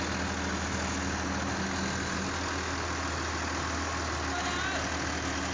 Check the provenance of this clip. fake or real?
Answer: real